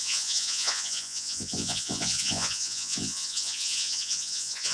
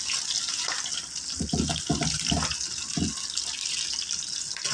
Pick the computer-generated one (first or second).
first